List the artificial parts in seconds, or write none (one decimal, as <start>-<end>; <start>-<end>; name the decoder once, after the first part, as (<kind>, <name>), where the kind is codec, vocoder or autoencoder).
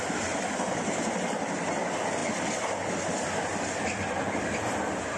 none